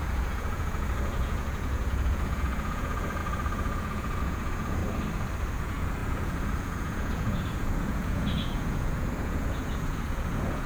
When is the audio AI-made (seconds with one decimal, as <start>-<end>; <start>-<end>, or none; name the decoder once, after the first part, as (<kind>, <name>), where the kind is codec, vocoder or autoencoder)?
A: 0.0-4.8 (vocoder, Vocos); 5.6-10.7